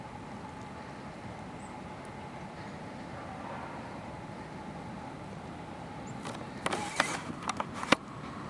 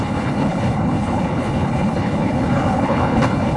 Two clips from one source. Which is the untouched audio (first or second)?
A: first